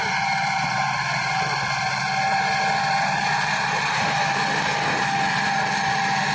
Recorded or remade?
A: remade